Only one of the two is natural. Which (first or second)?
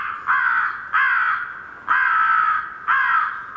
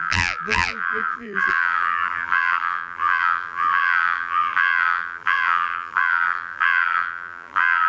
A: first